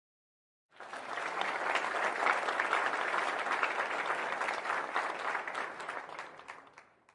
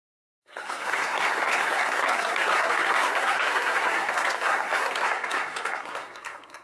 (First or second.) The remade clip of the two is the second